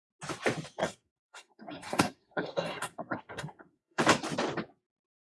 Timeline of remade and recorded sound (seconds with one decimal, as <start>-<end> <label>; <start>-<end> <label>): 0.0-0.8 recorded; 0.8-4.0 remade; 4.0-5.3 recorded